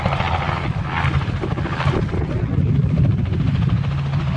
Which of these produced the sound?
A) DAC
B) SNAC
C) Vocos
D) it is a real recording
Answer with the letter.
D